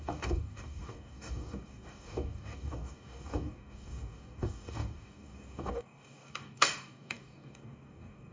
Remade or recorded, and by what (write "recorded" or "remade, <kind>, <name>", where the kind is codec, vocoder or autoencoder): remade, codec, DAC